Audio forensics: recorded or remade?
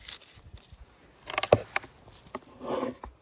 recorded